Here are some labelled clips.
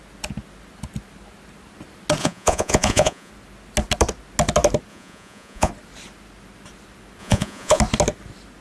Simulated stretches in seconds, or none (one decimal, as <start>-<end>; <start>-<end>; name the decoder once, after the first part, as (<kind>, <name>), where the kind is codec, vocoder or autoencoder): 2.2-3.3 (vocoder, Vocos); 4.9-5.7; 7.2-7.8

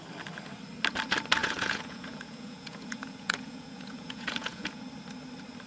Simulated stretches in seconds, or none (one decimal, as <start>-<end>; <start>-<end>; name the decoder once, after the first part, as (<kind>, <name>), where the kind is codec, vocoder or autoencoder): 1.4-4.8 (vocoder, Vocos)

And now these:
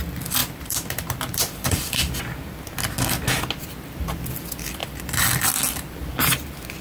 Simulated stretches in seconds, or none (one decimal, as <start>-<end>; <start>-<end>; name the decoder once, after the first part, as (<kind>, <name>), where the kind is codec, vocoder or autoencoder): 0.4-2.2 (vocoder, BigVGAN v2); 4.8-6.2